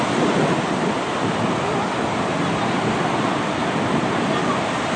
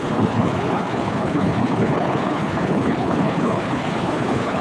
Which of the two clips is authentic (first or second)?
first